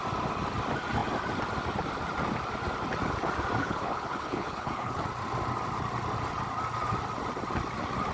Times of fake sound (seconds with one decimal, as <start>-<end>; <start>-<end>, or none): 3.6-5.0